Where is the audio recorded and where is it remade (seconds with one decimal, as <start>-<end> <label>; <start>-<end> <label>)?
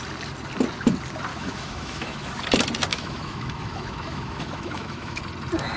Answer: 0.0-1.3 recorded; 1.3-2.3 remade; 2.3-2.9 recorded; 2.9-5.2 remade; 5.2-5.8 recorded